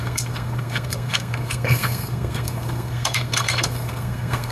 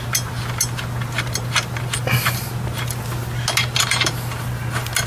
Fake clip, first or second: first